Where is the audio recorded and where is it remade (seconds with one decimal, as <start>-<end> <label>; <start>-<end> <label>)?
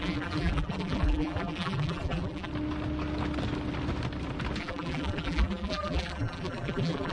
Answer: 0.0-2.5 remade; 2.5-4.6 recorded; 4.6-7.1 remade